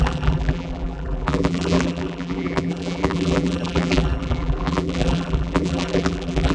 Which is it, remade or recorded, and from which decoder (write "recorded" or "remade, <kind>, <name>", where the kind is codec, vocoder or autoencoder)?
remade, vocoder, BigVGAN v2